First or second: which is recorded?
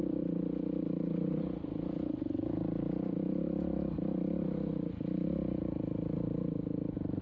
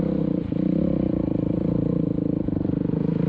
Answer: first